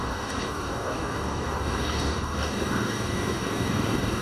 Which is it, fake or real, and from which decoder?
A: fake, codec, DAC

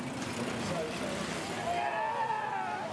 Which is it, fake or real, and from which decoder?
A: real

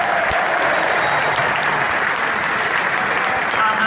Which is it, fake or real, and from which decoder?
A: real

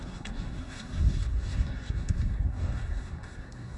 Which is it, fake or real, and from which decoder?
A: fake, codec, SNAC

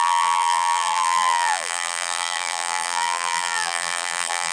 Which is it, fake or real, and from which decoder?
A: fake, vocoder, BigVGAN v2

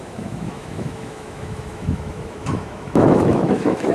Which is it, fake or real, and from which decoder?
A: fake, autoencoder, DAC-VAE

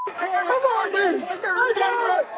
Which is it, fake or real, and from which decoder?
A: fake, codec, SNAC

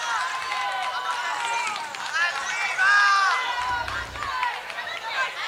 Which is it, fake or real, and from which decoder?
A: real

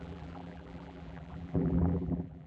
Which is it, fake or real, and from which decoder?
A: fake, vocoder, BigVGAN v2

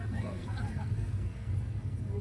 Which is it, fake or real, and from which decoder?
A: fake, codec, SNAC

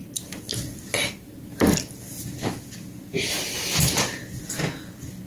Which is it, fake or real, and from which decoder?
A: real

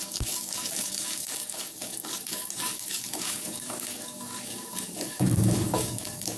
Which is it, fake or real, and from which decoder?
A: fake, codec, DAC